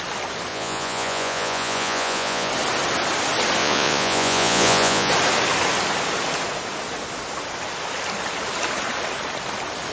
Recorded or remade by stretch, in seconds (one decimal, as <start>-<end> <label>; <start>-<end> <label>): 0.0-0.5 recorded; 0.5-2.5 remade; 2.5-3.6 recorded; 3.6-5.1 remade; 5.1-9.9 recorded